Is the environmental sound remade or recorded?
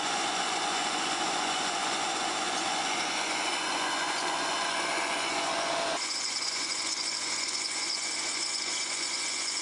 remade